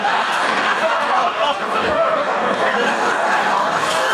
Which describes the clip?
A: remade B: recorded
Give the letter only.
A